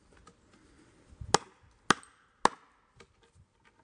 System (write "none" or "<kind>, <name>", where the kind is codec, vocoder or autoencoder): none